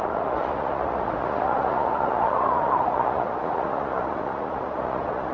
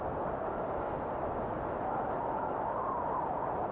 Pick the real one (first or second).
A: second